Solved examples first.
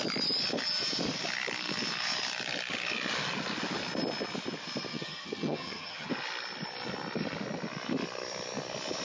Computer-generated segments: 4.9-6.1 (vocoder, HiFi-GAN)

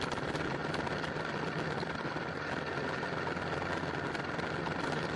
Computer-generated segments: none

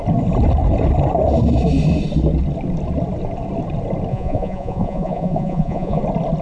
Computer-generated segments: 4.1-6.0 (vocoder, Vocos)

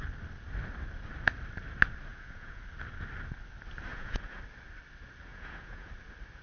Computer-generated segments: 2.1-2.6 (vocoder, Vocos); 3.9-4.4; 5.3-5.9

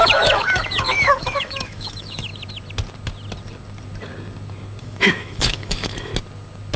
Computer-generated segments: 0.0-2.3 (autoencoder, DAC-VAE); 4.8-6.1

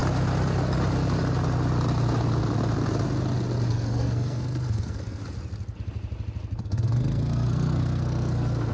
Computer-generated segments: 3.7-5.2 (codec, SNAC); 6.6-8.7

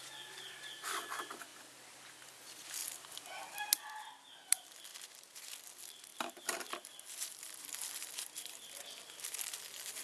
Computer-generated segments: 2.8-3.6 (vocoder, BigVGAN v2); 6.1-8.9

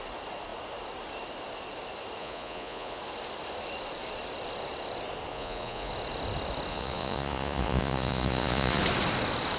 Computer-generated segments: 2.2-3.0 (vocoder, Vocos); 5.3-5.9; 6.7-8.8